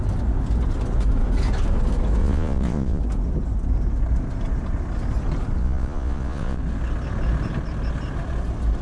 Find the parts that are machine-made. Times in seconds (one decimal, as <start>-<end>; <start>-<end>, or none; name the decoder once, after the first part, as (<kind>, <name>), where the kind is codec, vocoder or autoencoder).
2.2-3.0 (vocoder, Vocos); 5.6-6.6